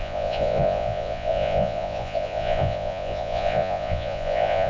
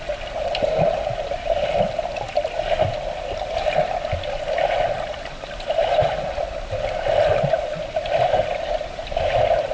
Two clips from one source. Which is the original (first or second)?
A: second